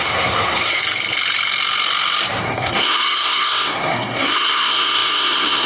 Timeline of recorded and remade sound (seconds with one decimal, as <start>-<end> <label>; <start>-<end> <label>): 0.0-0.8 remade; 0.8-2.4 recorded; 2.4-5.7 remade